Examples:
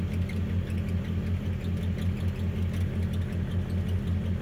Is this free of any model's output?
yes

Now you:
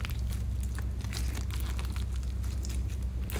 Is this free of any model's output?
yes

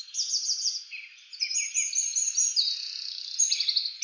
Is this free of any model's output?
yes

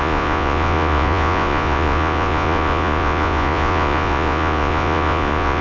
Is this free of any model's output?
no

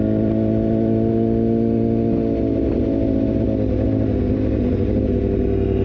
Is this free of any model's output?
yes